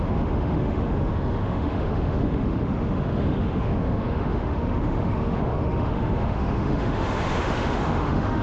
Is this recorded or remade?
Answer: remade